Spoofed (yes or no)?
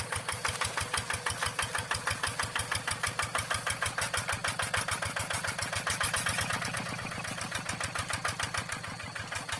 no